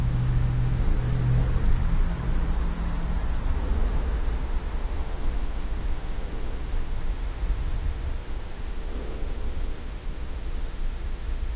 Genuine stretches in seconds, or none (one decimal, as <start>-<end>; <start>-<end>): 0.9-3.7